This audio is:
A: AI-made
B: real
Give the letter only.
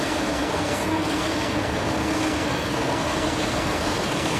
A